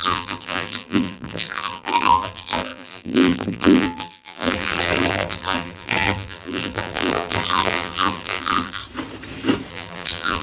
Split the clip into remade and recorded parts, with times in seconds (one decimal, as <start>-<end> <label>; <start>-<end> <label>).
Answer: 0.0-8.8 remade; 8.8-9.7 recorded; 9.7-10.4 remade